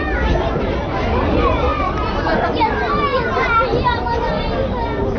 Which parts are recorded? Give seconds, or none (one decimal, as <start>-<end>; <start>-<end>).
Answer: 0.0-5.2